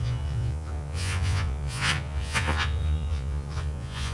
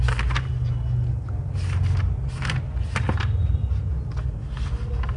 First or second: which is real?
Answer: second